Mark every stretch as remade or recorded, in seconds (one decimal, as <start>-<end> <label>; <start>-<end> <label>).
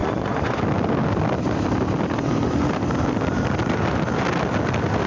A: 0.0-0.6 remade; 0.6-5.1 recorded